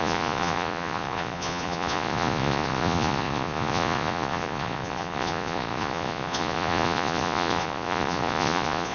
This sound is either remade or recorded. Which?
remade